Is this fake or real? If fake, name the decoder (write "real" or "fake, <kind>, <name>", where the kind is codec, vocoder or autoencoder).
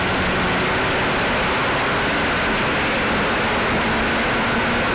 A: real